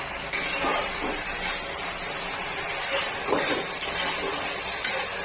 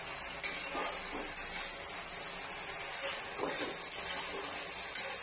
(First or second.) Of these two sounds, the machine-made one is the first